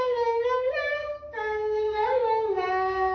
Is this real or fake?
fake